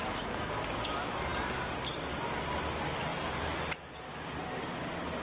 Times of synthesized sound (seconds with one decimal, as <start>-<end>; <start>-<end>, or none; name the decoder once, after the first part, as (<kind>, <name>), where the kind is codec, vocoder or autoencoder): 3.1-4.0 (vocoder, BigVGAN v2)